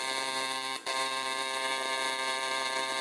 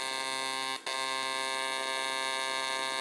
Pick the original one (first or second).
second